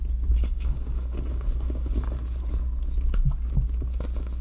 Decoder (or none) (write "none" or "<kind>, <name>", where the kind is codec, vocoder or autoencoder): none